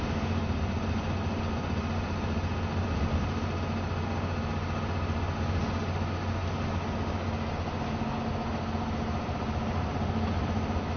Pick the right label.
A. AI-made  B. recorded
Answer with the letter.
B